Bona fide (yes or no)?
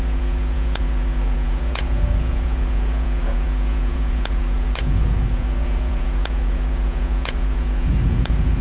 no